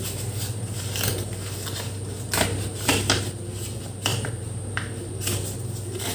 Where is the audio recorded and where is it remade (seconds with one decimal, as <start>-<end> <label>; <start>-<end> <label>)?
0.0-4.1 recorded; 4.1-5.1 remade; 5.1-6.1 recorded